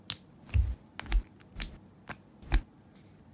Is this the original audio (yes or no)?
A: yes